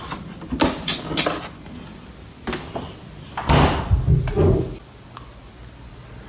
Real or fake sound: real